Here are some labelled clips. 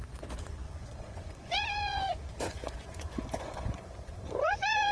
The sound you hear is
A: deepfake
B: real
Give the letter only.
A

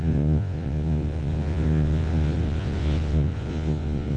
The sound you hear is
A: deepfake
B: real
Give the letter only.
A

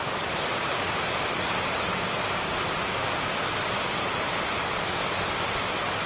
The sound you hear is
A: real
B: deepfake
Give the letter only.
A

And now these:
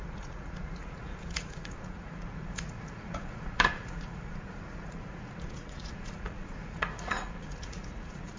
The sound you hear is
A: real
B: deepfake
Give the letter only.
B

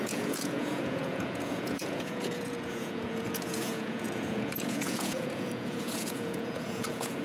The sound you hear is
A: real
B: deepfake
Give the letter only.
B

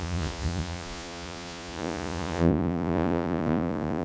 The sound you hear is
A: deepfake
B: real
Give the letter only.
A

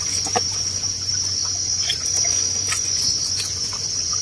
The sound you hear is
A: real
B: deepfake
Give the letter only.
B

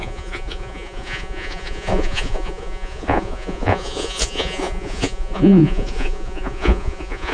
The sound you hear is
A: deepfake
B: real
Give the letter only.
A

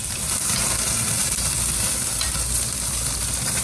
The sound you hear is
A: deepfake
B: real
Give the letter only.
B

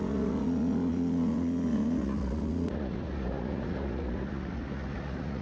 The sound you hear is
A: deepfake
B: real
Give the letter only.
A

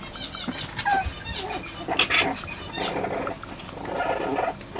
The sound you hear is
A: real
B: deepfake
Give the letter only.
A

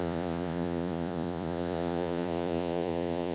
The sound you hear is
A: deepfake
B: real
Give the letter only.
A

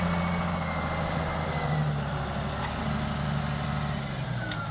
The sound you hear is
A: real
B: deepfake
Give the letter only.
A